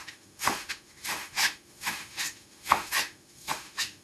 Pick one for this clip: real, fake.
fake